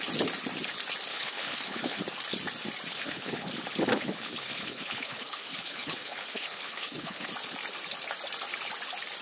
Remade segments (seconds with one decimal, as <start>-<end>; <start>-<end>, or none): 1.1-2.0; 2.9-3.5; 3.9-7.3